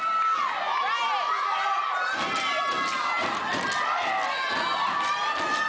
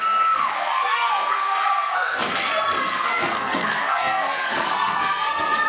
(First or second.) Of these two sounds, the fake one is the second